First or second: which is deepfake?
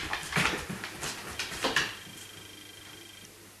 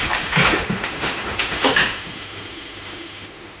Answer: second